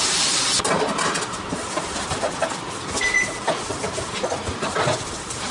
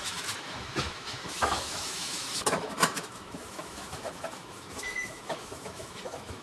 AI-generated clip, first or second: second